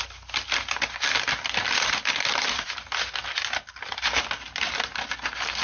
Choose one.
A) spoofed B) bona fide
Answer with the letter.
B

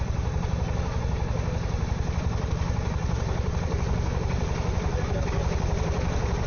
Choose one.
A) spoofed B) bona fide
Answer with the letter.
A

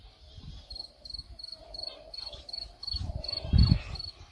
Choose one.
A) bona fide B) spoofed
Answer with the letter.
B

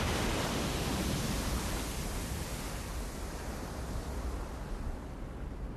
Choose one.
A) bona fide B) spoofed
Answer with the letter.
A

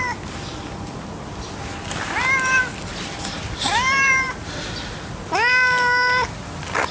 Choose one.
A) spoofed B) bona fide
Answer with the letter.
B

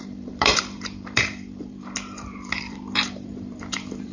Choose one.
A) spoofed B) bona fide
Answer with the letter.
A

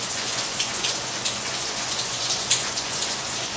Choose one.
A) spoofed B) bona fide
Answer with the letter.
A